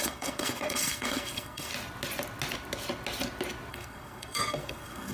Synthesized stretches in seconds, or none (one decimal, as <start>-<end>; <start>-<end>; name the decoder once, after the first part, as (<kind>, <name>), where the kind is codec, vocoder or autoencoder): 0.0-1.7 (codec, SNAC); 3.7-5.1